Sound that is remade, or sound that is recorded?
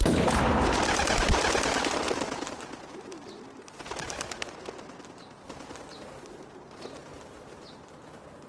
recorded